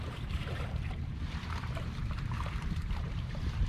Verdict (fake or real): fake